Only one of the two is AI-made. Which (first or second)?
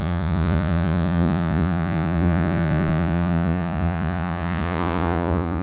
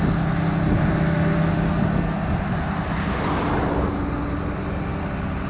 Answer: first